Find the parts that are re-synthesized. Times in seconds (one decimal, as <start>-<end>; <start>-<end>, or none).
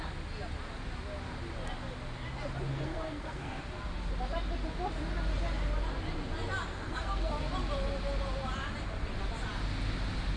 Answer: 2.7-3.6; 6.7-7.3